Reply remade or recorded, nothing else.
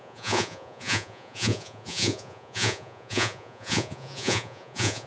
remade